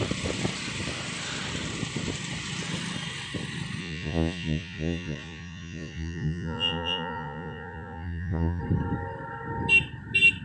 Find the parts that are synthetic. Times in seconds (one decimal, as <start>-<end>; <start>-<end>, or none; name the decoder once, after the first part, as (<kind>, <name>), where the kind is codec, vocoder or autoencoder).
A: 3.8-8.6 (vocoder, Vocos)